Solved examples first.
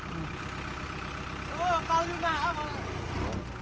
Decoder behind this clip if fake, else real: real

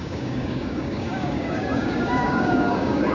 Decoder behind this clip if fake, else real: fake, codec, DAC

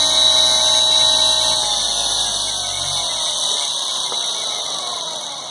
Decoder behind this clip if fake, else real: real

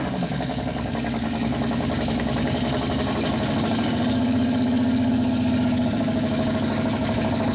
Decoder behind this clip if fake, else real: fake, codec, DAC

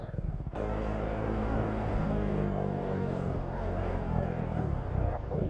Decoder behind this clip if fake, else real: fake, codec, DAC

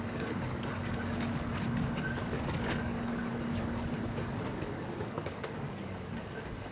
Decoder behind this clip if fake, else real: fake, codec, DAC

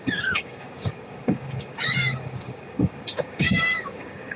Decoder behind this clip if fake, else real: fake, codec, DAC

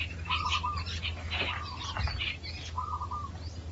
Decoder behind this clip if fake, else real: real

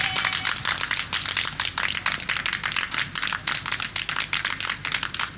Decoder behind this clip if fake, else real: real